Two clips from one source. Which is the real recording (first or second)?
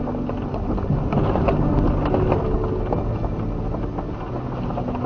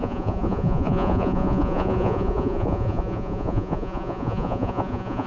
first